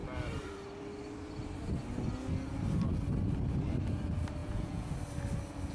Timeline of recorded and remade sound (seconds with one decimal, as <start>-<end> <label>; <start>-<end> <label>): 0.0-4.4 recorded; 4.4-4.9 remade; 4.9-5.7 recorded